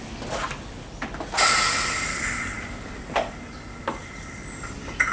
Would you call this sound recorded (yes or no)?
yes